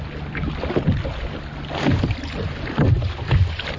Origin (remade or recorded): recorded